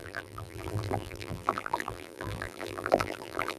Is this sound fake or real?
fake